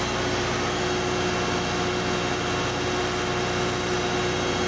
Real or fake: real